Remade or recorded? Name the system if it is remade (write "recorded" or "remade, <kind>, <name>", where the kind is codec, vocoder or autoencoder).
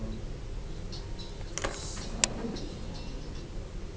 recorded